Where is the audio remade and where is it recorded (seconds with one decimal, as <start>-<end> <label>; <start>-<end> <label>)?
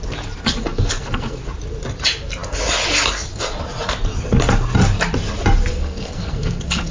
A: 0.0-0.7 recorded; 0.7-1.4 remade; 1.4-5.7 recorded; 5.7-6.9 remade